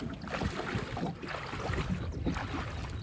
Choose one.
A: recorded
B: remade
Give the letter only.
A